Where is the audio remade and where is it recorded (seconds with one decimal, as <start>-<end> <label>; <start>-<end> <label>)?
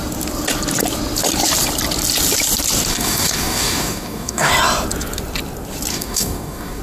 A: 0.0-2.9 recorded; 2.9-4.5 remade; 4.5-5.9 recorded; 5.9-6.8 remade